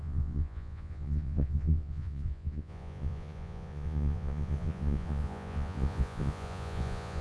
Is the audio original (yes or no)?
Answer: no